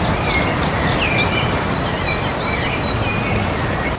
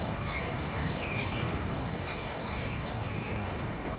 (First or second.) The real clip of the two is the first